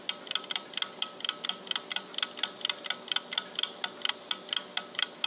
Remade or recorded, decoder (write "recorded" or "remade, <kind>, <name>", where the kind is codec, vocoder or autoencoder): recorded